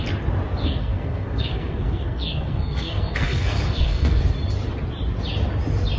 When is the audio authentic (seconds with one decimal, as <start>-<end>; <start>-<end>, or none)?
0.0-0.6; 4.2-6.0